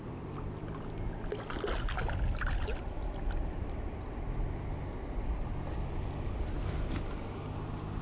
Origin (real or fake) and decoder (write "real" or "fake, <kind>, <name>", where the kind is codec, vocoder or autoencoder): real